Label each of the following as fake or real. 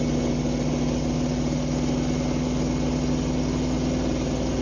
real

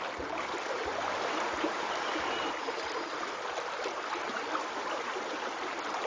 real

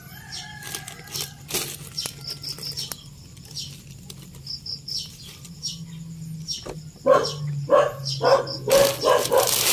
real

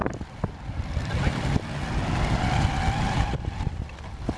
real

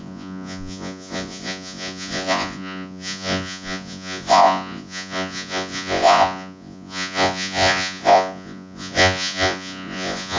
fake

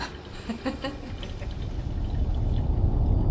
real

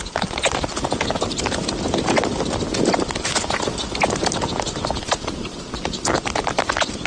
real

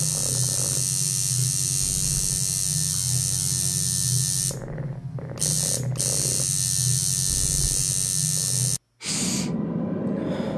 real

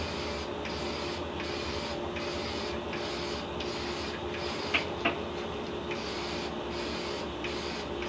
real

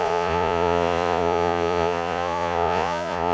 fake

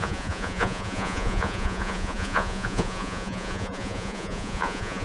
fake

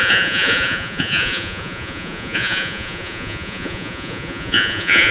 fake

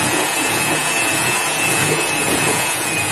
fake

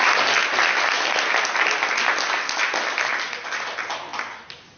real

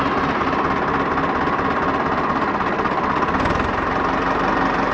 real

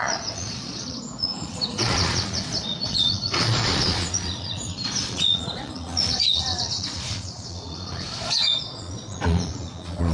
fake